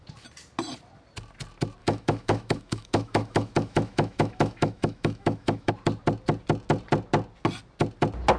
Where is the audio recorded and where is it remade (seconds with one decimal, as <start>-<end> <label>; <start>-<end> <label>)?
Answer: 0.0-1.8 recorded; 1.8-5.7 remade; 5.7-8.4 recorded